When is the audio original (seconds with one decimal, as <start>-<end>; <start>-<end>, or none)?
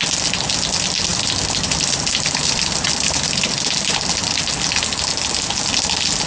0.0-1.1; 4.1-6.3